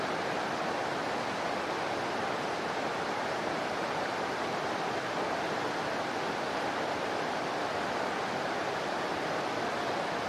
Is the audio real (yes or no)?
no